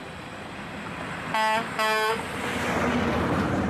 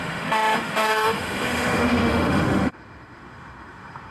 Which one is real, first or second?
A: first